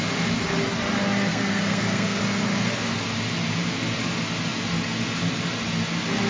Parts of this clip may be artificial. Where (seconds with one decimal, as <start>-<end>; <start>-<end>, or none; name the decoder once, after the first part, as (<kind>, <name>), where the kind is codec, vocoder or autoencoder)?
1.3-2.2 (codec, SNAC)